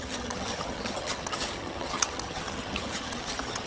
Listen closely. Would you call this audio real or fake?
fake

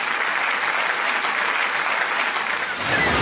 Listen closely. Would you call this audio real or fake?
real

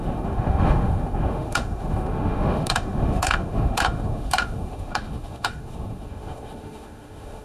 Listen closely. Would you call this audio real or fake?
fake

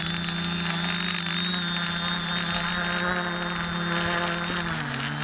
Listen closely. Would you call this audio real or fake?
real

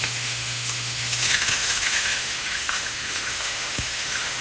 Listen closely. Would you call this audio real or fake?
fake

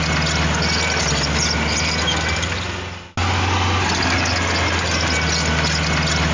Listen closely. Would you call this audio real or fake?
real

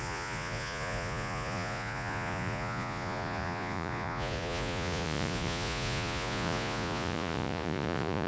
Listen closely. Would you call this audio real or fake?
fake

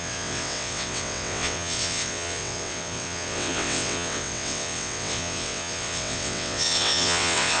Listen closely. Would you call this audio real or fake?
fake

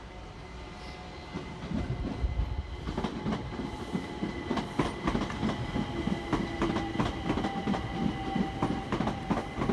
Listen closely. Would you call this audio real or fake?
real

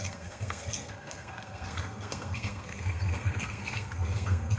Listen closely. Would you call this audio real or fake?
fake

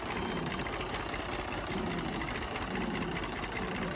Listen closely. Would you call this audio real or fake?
real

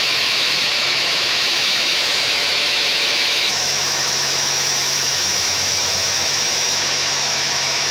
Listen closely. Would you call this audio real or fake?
fake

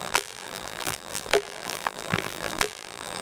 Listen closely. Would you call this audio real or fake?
fake